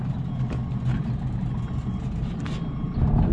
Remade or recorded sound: recorded